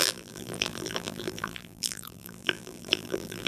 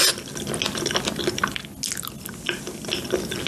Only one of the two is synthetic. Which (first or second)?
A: first